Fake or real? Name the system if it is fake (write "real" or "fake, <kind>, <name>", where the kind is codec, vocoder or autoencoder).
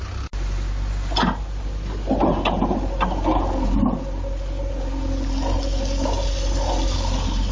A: real